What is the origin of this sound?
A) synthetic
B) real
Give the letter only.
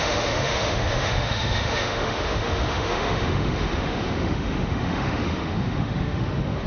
A